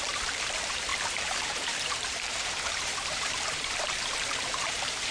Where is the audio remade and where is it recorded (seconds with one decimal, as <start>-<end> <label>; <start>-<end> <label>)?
0.0-5.1 remade